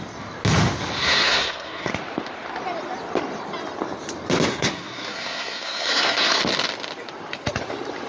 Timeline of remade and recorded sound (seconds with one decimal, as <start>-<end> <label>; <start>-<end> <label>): 0.0-1.0 recorded; 1.0-1.9 remade; 1.9-4.5 recorded; 4.5-6.4 remade; 6.4-8.1 recorded